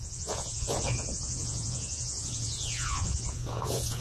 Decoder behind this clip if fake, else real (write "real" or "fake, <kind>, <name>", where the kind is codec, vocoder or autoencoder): fake, vocoder, Vocos